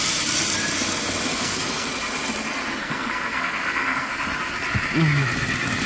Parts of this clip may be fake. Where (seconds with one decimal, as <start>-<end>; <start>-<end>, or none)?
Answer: 1.3-1.9; 2.8-4.1